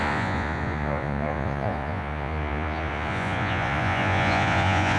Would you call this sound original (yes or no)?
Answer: no